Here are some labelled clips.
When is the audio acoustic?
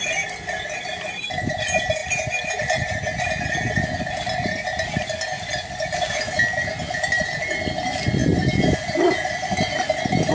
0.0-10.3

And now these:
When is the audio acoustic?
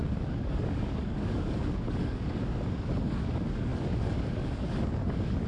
none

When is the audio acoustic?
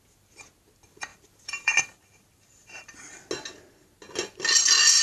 0.0-1.1; 1.8-5.0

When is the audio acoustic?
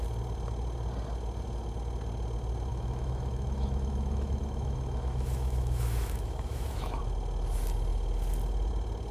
0.0-2.7; 7.0-9.1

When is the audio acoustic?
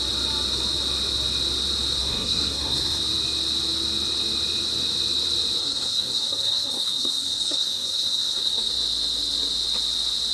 0.0-2.0; 3.0-5.6; 8.7-10.3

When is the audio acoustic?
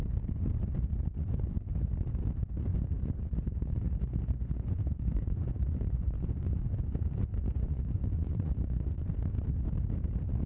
0.0-2.7; 6.6-7.3; 9.1-10.5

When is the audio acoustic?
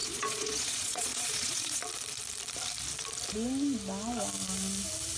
1.8-5.2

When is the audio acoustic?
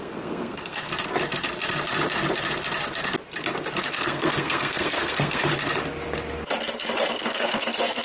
0.9-3.9; 5.5-7.2